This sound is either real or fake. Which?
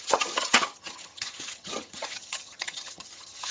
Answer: fake